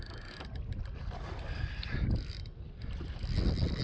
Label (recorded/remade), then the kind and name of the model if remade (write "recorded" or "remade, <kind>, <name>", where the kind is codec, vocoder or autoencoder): recorded